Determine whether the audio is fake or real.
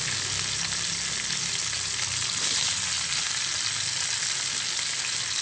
real